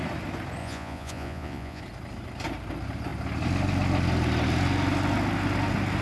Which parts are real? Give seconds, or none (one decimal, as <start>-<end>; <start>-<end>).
0.0-0.6; 1.8-6.0